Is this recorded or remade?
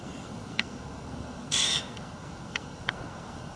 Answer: remade